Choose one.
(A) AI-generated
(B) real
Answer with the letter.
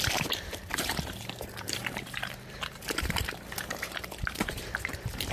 A